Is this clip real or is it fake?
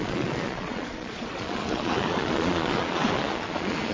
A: fake